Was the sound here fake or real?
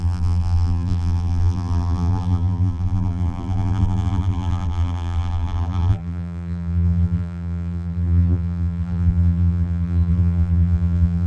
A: fake